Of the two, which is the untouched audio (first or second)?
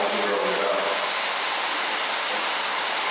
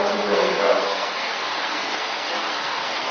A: first